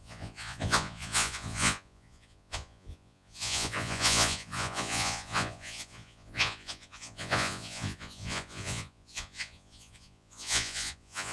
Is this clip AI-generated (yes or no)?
yes